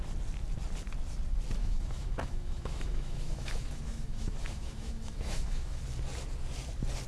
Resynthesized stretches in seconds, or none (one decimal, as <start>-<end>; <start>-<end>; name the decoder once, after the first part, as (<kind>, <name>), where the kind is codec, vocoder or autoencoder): 1.6-5.8 (autoencoder, DAC-VAE)